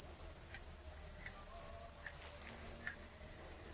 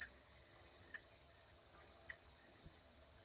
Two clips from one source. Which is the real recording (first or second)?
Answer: first